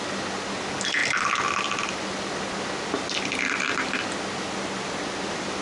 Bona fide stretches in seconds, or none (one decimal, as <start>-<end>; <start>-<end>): 0.0-5.6